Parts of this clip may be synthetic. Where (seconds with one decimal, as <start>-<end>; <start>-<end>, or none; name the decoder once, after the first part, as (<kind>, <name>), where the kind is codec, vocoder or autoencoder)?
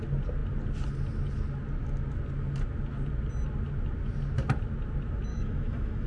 5.3-6.1 (autoencoder, DAC-VAE)